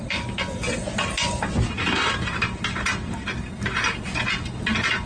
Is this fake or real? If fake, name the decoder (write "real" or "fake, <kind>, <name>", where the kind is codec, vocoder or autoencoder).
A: real